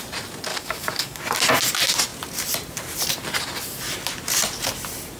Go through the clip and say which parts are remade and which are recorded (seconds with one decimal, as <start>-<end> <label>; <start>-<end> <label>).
0.0-0.5 recorded; 0.5-1.2 remade; 1.2-5.2 recorded